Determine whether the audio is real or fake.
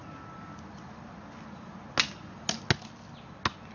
real